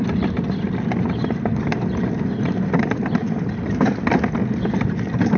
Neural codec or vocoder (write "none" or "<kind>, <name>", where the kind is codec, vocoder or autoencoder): none